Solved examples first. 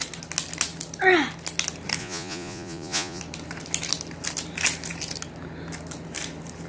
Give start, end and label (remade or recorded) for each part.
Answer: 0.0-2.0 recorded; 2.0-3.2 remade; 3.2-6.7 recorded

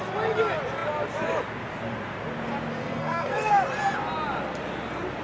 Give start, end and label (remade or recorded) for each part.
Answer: 0.0-2.8 recorded; 2.8-3.5 remade; 3.5-5.2 recorded

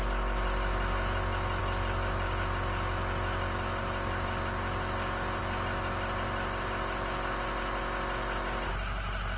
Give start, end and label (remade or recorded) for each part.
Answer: 0.0-9.4 recorded

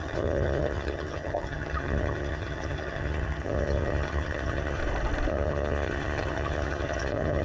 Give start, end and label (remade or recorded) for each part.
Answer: 0.0-4.8 remade; 4.8-5.3 recorded; 5.3-7.4 remade